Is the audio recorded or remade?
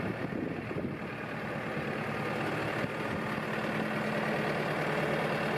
recorded